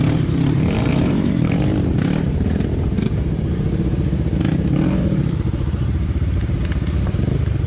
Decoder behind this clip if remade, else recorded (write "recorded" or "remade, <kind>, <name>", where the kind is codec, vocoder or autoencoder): remade, vocoder, BigVGAN v2